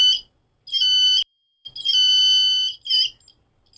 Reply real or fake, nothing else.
real